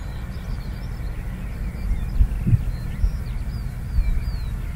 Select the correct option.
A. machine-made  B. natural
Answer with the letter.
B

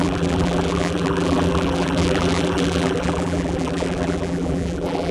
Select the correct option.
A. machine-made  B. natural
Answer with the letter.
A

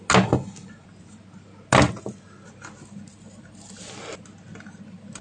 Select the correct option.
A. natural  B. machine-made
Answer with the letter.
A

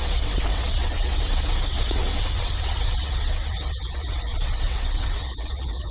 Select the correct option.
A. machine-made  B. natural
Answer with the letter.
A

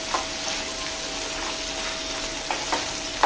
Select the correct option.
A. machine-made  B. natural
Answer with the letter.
B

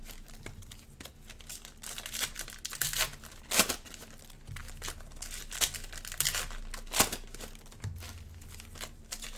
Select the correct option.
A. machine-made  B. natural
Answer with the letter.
B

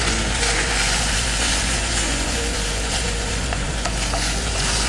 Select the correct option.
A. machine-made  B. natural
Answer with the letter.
A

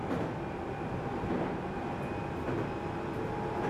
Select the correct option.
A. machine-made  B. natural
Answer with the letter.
B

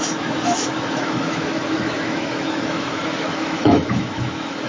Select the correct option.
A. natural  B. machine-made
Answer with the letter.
B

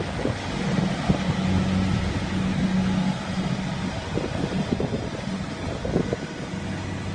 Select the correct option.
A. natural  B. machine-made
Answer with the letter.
A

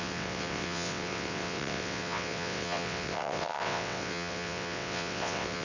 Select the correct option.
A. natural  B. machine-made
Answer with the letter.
B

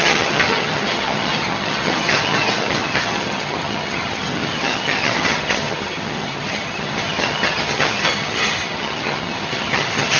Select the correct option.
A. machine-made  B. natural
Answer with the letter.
A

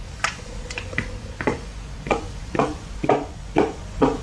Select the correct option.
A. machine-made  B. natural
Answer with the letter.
A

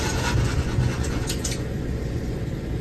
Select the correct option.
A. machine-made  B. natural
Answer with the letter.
A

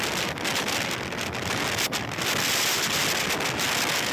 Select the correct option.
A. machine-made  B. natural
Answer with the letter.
B